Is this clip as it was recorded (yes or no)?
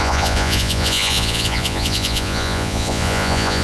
no